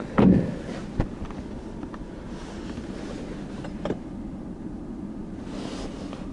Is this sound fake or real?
real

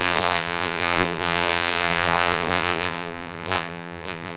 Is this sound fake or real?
fake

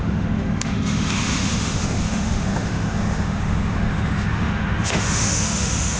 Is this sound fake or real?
fake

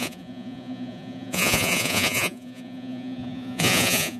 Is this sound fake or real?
fake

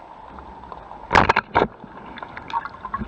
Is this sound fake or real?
real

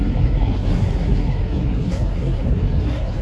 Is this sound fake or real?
fake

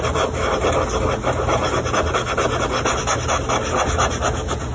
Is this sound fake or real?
real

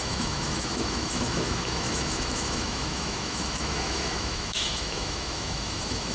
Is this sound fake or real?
fake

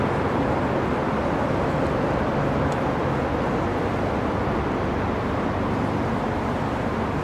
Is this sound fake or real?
real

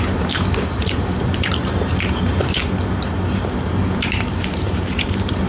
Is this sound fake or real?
fake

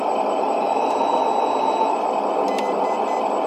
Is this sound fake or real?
real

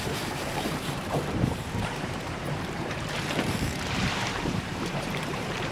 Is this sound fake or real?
fake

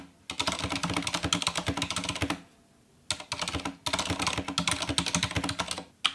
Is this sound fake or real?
real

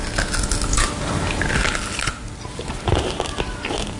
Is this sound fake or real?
real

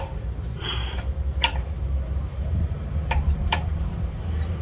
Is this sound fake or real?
fake